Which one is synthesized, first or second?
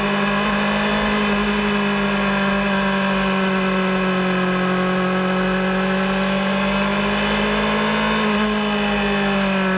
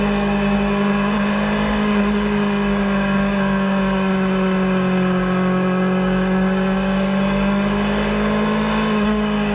second